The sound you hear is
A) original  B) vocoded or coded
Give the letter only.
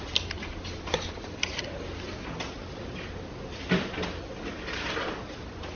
A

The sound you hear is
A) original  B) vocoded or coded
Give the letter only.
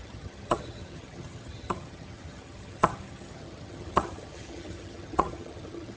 B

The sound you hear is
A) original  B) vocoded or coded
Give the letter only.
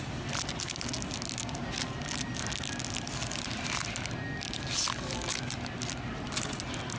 A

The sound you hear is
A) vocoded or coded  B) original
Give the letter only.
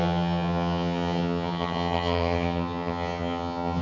A